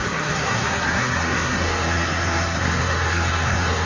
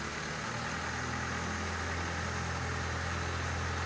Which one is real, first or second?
second